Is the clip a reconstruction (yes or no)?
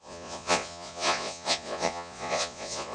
yes